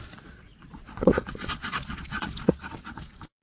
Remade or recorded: remade